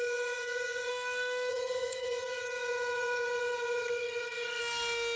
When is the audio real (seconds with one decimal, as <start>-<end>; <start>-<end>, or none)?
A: 0.9-1.5; 4.6-5.2